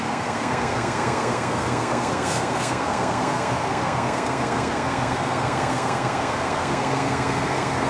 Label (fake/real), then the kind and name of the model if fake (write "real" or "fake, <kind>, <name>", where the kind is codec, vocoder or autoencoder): fake, codec, SNAC